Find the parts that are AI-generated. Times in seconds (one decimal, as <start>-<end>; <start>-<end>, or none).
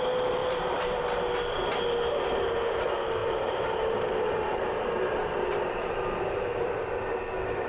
0.4-1.0; 3.2-5.9